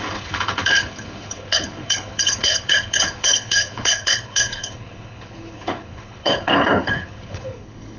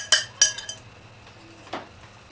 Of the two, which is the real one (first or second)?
second